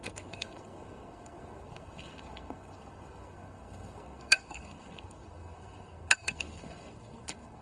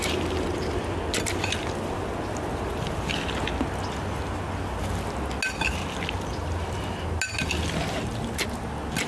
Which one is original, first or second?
second